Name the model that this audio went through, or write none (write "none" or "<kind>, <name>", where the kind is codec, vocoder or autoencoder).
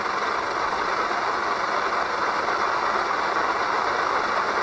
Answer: none